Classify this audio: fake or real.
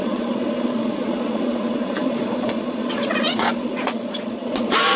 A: fake